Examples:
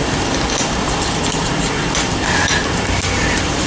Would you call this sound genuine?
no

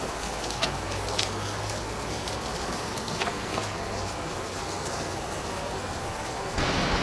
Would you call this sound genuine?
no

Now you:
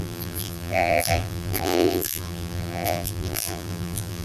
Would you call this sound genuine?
no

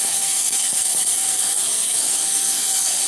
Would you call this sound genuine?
no